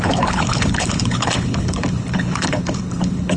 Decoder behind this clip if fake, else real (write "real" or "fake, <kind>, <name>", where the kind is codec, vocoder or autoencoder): fake, codec, HILCodec